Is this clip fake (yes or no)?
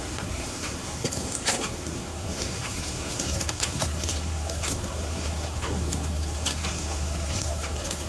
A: yes